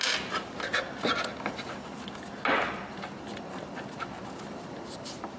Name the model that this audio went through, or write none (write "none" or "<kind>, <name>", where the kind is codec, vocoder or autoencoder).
none